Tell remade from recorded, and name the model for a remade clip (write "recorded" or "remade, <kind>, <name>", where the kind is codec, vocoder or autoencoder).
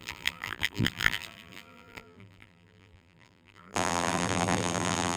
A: remade, vocoder, BigVGAN v2